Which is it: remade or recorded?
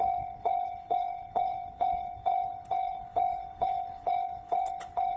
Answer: remade